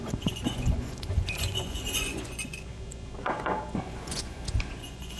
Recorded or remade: remade